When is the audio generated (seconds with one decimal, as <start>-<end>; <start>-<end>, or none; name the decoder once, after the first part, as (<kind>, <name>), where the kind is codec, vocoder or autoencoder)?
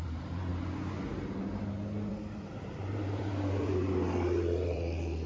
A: 0.0-0.5 (vocoder, BigVGAN v2); 2.1-5.3